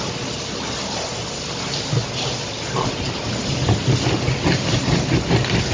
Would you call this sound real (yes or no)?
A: yes